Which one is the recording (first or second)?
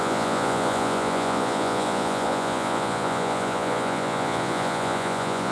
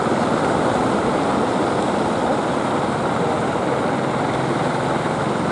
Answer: second